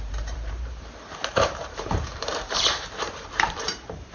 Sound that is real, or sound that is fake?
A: fake